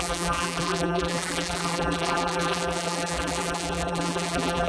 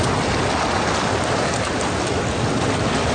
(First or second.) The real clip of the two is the second